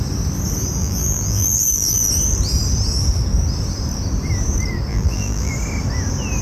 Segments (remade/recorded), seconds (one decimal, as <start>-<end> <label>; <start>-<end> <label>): 0.0-0.8 recorded; 0.8-2.1 remade; 2.1-4.9 recorded; 4.9-5.5 remade; 5.5-6.4 recorded